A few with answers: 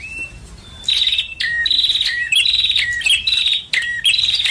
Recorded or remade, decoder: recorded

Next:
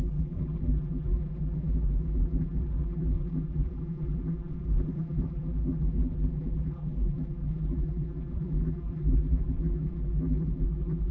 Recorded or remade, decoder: remade, vocoder, BigVGAN v2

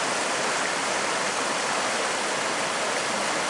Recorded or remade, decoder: recorded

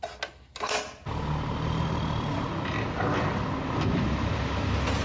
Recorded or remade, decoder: recorded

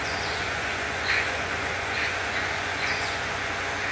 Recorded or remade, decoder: remade, vocoder, Vocos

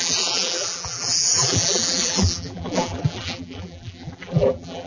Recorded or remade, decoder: remade, vocoder, BigVGAN v2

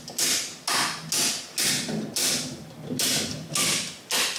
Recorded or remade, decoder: recorded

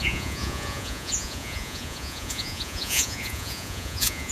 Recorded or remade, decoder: remade, vocoder, Vocos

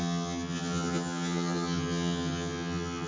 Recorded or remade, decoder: remade, vocoder, HiFi-GAN